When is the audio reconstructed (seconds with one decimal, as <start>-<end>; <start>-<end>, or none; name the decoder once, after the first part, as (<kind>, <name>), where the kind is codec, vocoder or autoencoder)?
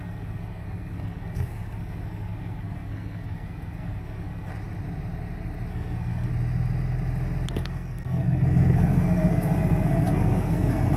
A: 0.0-4.5 (codec, SNAC); 5.7-6.3; 7.5-11.0